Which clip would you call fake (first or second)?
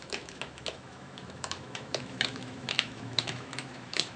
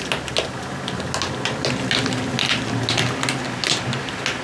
first